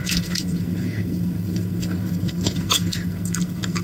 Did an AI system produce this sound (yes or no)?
yes